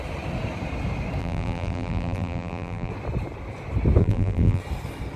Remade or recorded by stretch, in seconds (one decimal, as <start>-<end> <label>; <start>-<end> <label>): 0.0-1.2 recorded; 1.2-2.9 remade; 2.9-4.0 recorded; 4.0-4.6 remade; 4.6-5.2 recorded